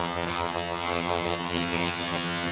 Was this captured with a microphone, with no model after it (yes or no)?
no